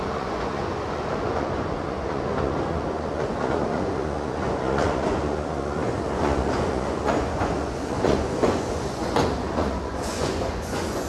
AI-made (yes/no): yes